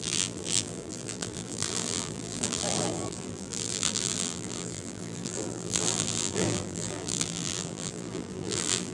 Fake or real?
fake